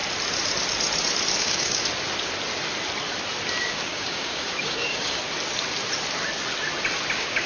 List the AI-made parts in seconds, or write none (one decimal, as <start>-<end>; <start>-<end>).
1.4-1.8; 3.6-5.2; 7.1-7.5